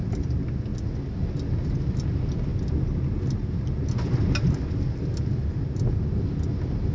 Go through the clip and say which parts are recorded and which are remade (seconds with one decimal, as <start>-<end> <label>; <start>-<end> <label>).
0.0-6.9 recorded